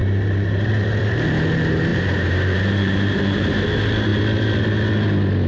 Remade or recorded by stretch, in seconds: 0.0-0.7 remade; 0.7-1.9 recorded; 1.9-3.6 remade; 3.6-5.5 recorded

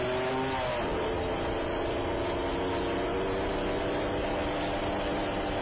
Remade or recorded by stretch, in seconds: 0.0-5.6 recorded

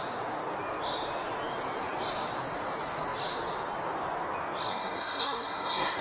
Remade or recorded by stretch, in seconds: 0.0-4.7 recorded; 4.7-6.0 remade

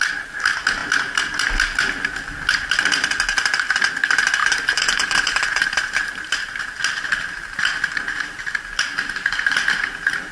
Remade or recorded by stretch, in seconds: 0.0-4.4 recorded; 4.4-6.4 remade; 6.4-10.3 recorded

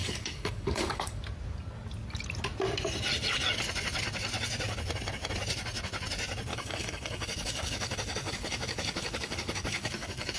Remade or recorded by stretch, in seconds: 0.0-1.2 remade; 1.2-6.5 recorded; 6.5-10.4 remade

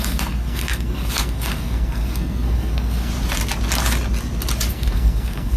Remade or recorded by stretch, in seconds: 0.0-3.1 remade; 3.1-4.7 recorded; 4.7-5.6 remade

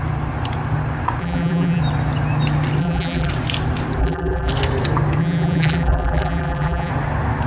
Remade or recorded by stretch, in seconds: 0.0-1.2 recorded; 1.2-1.8 remade; 1.8-2.8 recorded; 2.8-3.3 remade; 3.3-4.0 recorded; 4.0-4.5 remade; 4.5-5.2 recorded; 5.2-6.9 remade; 6.9-7.5 recorded

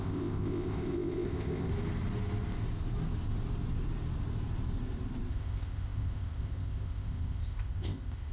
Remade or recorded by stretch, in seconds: 0.0-1.7 remade; 1.7-5.3 recorded; 5.3-8.3 remade